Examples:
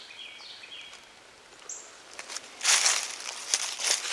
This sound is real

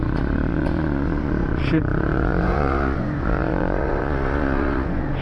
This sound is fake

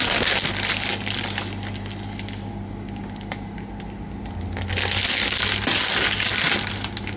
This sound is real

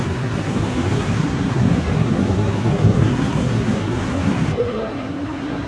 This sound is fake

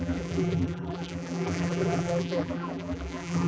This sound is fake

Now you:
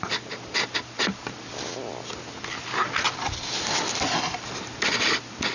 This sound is real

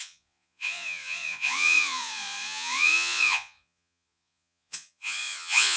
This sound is fake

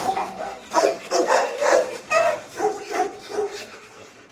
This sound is fake